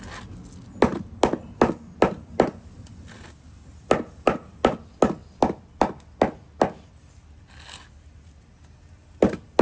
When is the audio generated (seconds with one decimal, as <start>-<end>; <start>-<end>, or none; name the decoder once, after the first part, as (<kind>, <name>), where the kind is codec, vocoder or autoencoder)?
none